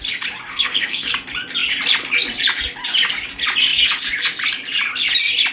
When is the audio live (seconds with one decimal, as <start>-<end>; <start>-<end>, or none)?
0.0-0.5; 1.1-5.5